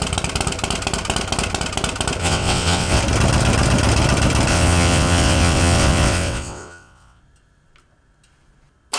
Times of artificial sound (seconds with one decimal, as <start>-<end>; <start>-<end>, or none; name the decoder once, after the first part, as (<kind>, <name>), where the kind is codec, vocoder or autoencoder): 2.2-3.0 (vocoder, WaveNeXt); 4.5-7.2